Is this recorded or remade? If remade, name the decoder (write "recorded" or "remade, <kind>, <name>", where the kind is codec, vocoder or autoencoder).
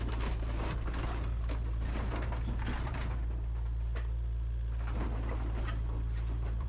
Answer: remade, vocoder, BigVGAN v2